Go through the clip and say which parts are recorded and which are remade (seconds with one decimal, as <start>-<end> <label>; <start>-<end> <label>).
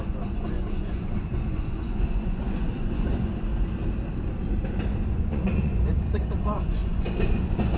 0.0-3.5 remade; 3.5-5.1 recorded; 5.1-7.8 remade